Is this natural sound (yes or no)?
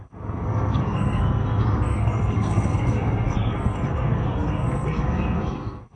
no